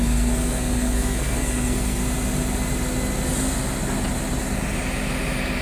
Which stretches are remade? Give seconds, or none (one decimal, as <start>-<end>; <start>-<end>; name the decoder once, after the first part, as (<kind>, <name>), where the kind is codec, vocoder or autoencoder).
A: 0.0-2.0 (codec, SNAC)